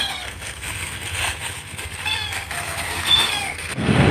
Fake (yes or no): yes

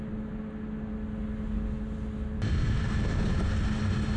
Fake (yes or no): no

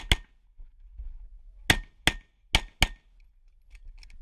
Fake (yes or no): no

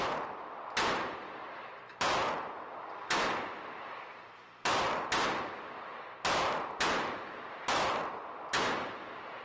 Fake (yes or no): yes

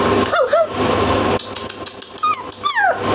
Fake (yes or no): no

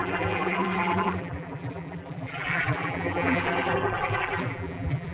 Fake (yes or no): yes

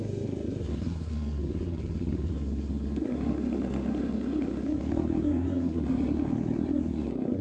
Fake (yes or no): yes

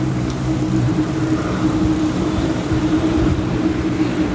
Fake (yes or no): yes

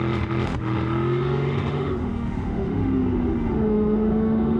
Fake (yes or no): yes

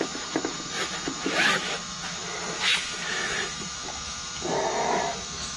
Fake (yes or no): yes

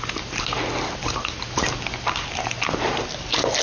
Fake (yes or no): no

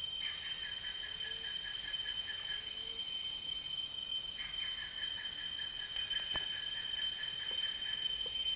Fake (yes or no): no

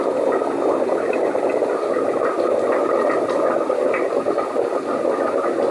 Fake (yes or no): no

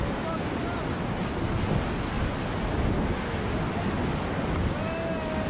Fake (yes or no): no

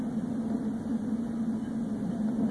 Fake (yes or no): no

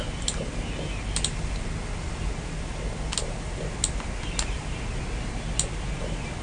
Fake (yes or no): no